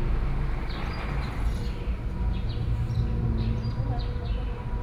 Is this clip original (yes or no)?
yes